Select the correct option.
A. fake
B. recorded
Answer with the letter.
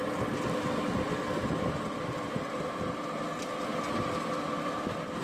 B